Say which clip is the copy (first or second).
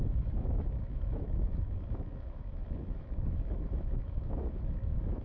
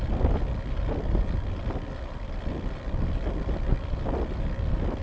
first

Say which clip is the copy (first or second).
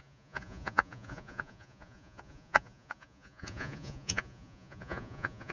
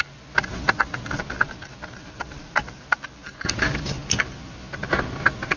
first